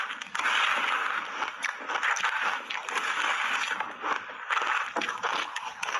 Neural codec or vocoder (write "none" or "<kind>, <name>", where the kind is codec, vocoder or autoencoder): none